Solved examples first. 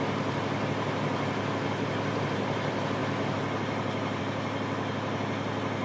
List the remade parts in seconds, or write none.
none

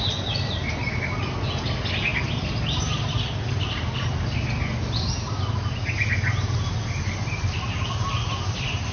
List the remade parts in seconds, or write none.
none

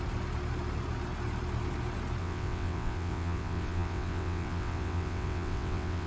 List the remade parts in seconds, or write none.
2.2-6.1

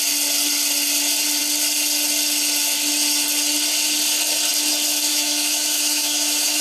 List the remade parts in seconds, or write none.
5.1-6.6

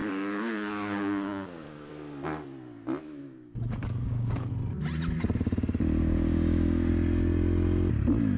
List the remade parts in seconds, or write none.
0.0-1.9; 3.2-4.5; 6.0-6.9

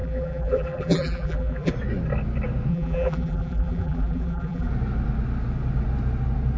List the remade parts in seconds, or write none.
0.0-1.7; 2.7-4.7

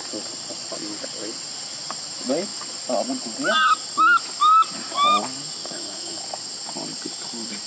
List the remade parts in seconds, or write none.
5.6-6.2